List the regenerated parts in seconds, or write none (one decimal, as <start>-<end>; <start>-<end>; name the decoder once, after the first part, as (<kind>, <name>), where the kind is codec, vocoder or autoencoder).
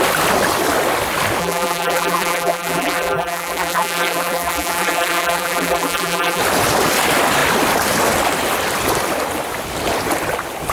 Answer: 1.4-6.4 (vocoder, BigVGAN v2)